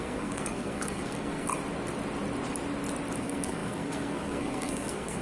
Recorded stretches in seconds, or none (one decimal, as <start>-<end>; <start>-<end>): 1.5-3.2

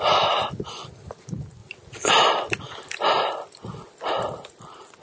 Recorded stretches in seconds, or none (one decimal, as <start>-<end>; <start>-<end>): 0.0-5.0

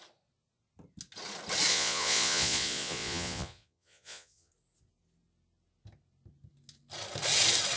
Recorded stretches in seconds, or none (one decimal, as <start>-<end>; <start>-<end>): 0.0-1.7; 4.5-7.8

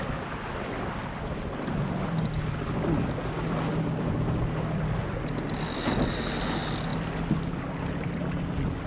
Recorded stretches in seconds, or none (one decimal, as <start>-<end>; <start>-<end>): 0.0-8.9

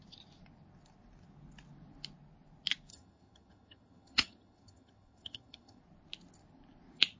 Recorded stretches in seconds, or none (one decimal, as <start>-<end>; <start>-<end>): 0.0-2.9; 5.8-7.2

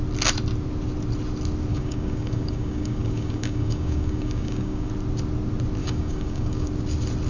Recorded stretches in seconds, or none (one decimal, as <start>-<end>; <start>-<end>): 0.0-1.7; 4.9-5.8; 6.7-7.3

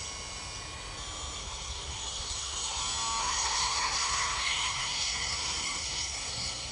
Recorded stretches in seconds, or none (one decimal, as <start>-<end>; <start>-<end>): 0.0-1.4; 2.8-3.2

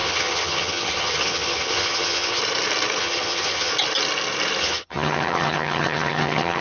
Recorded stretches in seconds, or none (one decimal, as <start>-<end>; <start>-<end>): 2.4-3.0; 3.7-4.6